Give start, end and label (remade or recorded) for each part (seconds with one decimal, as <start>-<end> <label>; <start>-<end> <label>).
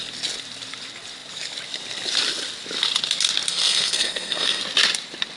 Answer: 0.0-3.5 recorded; 3.5-4.6 remade; 4.6-5.4 recorded